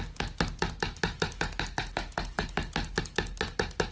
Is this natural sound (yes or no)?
yes